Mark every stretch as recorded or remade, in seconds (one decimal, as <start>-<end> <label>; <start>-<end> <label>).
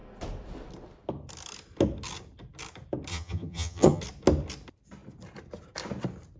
0.0-3.1 recorded; 3.1-4.0 remade; 4.0-6.4 recorded